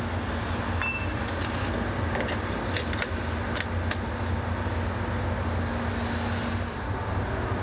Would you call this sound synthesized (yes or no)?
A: no